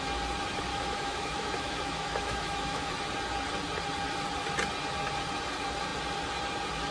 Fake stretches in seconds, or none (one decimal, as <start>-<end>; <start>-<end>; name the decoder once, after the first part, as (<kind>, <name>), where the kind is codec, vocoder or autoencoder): 0.7-2.9 (autoencoder, DAC-VAE)